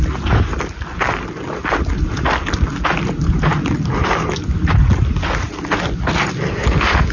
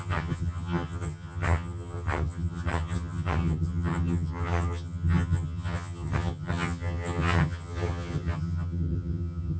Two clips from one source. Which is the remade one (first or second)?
second